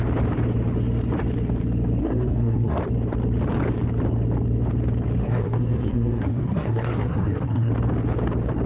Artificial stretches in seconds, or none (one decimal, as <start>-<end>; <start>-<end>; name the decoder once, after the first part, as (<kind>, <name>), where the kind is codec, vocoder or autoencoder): 2.0-2.8 (codec, SNAC); 5.2-7.7